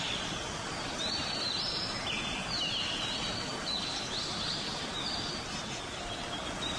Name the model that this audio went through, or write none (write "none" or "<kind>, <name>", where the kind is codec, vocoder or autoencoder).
none